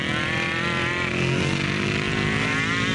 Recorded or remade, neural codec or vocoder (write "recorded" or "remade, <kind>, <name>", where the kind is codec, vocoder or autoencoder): recorded